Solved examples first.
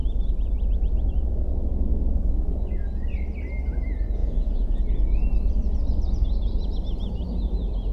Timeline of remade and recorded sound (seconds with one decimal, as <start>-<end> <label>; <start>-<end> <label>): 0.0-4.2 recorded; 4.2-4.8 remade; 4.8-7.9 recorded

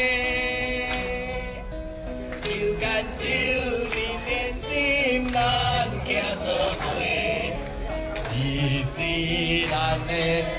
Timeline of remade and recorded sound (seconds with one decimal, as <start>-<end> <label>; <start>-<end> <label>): 0.0-3.1 recorded; 3.1-3.9 remade; 3.9-5.5 recorded; 5.5-7.5 remade; 7.5-10.6 recorded

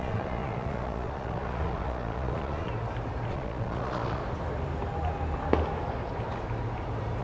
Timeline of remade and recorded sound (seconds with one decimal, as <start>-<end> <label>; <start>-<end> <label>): 0.0-2.7 remade; 2.7-3.3 recorded; 3.3-4.2 remade; 4.2-7.2 recorded